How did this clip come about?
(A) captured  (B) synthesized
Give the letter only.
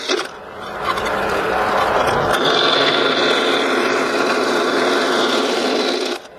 A